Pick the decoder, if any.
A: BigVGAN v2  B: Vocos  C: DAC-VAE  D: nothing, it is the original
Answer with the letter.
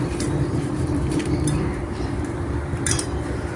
A